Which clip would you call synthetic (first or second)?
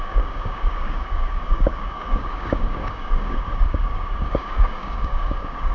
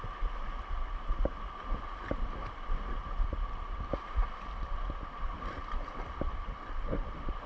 first